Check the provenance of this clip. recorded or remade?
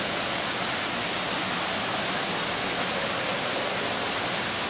recorded